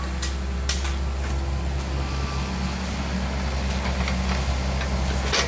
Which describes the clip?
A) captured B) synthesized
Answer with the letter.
A